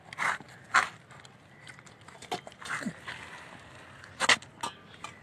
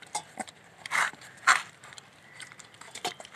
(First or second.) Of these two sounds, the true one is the first